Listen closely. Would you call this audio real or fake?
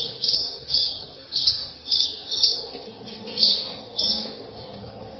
fake